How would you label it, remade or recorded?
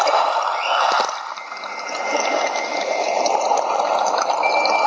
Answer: recorded